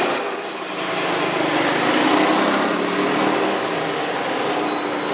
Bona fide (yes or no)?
yes